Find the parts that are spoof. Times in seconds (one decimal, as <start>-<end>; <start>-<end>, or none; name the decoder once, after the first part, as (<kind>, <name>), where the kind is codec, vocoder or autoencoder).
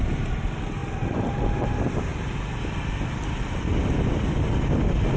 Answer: none